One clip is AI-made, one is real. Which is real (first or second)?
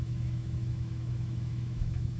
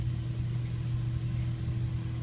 second